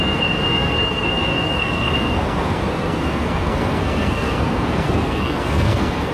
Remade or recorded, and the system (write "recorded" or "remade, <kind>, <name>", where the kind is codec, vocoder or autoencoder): remade, codec, SNAC